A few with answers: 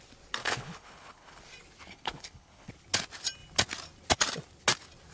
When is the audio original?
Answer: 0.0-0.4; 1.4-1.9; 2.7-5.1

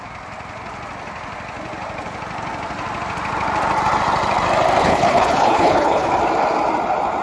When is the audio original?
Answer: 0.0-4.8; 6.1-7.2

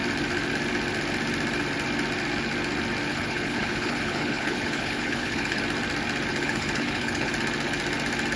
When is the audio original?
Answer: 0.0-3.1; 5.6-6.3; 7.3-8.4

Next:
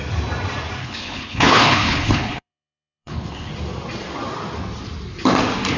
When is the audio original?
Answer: 0.0-0.8; 3.5-5.8

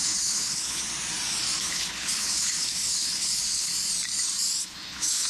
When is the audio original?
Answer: 0.8-1.6; 3.7-4.6

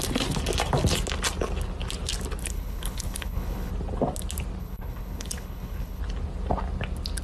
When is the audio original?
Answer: 0.0-2.4; 3.7-4.6; 6.0-7.2

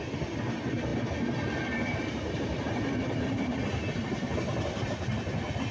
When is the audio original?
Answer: 0.0-5.7

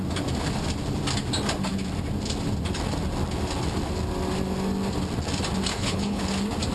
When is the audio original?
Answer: 0.0-5.7; 6.2-6.7